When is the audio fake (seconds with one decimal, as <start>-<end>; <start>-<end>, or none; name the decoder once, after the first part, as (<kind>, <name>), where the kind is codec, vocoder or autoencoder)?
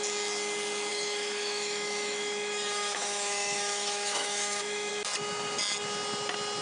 0.9-4.9 (autoencoder, DAC-VAE)